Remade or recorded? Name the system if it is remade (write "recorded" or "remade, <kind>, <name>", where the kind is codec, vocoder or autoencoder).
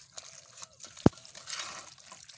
recorded